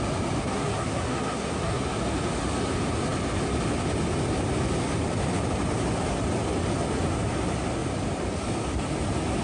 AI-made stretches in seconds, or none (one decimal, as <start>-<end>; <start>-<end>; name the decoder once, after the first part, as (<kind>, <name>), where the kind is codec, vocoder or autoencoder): 0.4-1.8 (codec, SNAC)